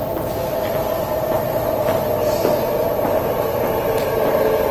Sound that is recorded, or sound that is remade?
recorded